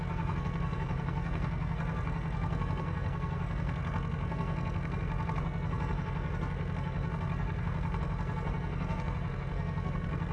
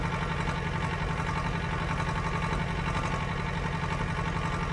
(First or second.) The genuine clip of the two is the second